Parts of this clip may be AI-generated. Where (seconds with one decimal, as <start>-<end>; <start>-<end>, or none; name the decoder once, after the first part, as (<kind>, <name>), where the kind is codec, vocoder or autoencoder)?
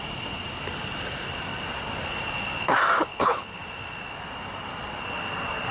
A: 3.1-3.6 (codec, HILCodec)